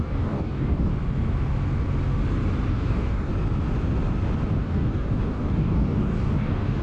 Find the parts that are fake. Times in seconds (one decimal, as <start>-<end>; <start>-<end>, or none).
0.0-0.9; 2.7-3.3; 4.6-6.8

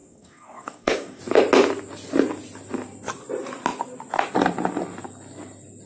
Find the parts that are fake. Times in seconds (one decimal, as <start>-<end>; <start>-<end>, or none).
0.0-1.2

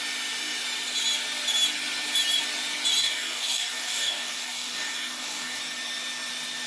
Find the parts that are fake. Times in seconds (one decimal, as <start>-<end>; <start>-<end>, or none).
3.0-5.6

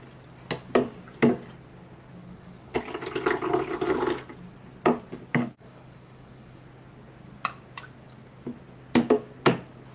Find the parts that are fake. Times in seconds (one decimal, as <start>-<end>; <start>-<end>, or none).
2.2-2.8; 5.3-6.6

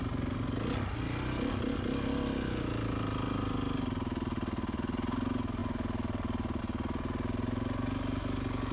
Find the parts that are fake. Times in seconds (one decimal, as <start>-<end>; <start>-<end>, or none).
none

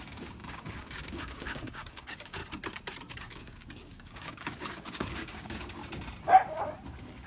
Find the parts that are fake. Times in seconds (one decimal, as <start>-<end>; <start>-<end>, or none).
0.0-2.4; 3.1-5.8